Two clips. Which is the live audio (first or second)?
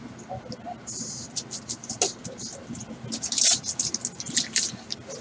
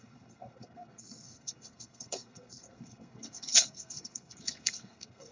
first